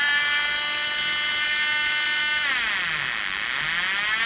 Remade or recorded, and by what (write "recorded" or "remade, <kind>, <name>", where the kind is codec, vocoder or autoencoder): recorded